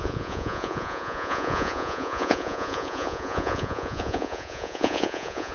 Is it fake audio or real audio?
fake